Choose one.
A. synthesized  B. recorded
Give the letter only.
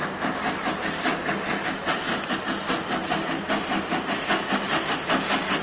B